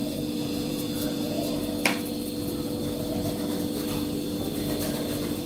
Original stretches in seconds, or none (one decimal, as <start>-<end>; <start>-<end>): 1.5-5.5